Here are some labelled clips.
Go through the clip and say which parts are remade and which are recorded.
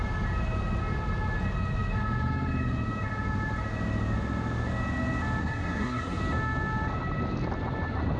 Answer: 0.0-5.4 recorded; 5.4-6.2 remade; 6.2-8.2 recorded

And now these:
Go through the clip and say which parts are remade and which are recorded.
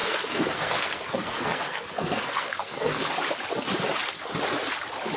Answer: 0.0-3.1 remade; 3.1-5.2 recorded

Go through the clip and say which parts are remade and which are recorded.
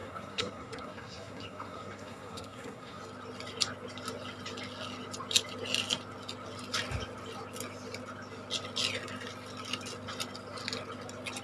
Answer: 0.0-3.0 remade; 3.0-11.4 recorded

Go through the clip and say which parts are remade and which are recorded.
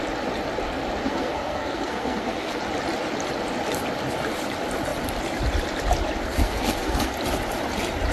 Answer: 0.0-1.0 recorded; 1.0-2.6 remade; 2.6-6.2 recorded; 6.2-7.1 remade; 7.1-8.1 recorded